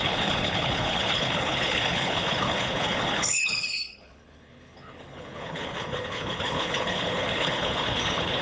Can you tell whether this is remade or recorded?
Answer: remade